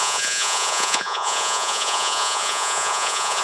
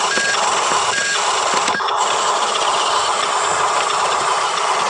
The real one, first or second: second